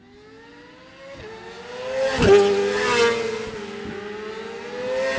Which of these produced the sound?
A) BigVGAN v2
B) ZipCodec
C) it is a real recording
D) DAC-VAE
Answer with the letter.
C